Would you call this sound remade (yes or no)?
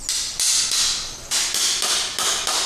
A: no